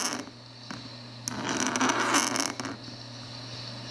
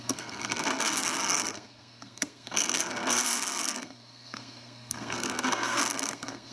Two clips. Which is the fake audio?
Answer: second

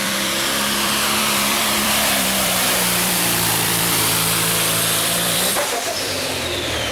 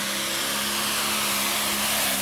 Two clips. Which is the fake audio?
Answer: first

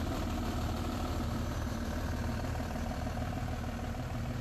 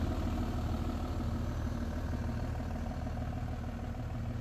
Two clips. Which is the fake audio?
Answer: first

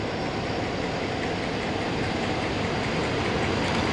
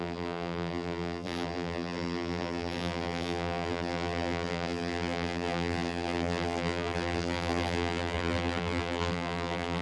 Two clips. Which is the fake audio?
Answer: second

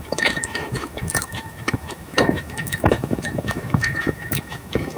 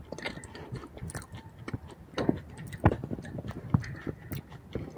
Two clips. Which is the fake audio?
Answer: first